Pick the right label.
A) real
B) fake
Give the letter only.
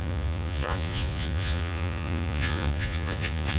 B